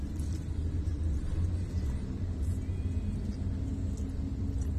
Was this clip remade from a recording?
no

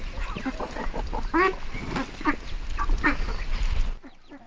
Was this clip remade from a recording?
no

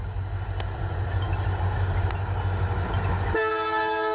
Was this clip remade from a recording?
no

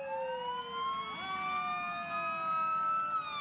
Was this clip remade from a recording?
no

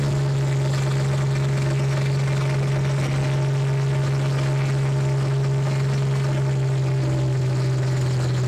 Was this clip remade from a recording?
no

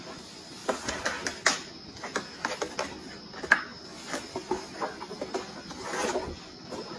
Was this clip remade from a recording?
no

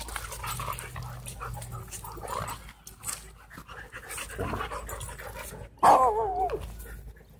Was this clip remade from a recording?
no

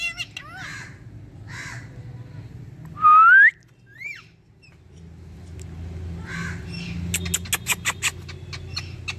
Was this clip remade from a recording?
no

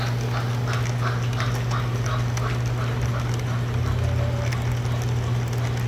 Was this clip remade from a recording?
no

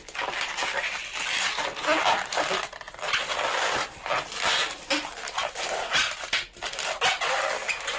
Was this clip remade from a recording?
no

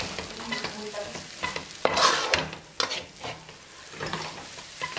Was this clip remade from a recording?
no